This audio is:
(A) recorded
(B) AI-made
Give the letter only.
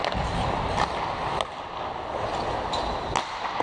A